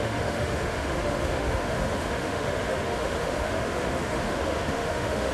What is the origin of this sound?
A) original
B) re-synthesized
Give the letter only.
B